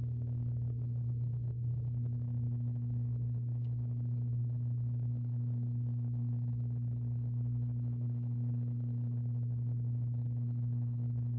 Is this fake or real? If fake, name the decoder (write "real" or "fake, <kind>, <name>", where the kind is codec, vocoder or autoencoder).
fake, codec, DAC